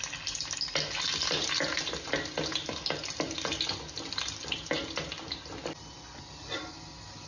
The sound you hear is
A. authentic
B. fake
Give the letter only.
A